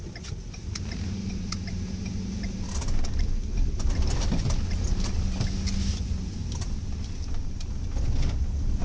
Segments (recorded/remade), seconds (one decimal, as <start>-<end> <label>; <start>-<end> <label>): 0.0-8.8 recorded